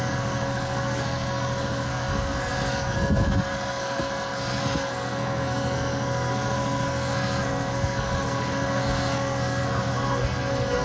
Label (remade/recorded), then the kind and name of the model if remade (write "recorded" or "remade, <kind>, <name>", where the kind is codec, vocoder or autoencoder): remade, codec, SNAC